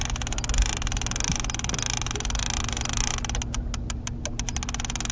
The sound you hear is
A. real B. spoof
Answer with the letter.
A